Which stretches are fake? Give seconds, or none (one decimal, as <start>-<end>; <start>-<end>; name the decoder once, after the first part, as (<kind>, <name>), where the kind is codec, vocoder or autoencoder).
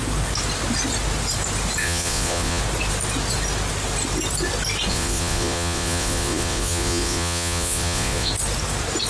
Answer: 1.8-2.6 (vocoder, Vocos); 4.9-8.3